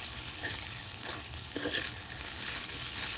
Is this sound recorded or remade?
remade